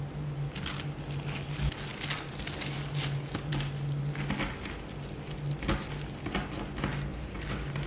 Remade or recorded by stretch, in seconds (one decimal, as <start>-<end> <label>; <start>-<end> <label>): 0.0-7.1 recorded; 7.1-7.9 remade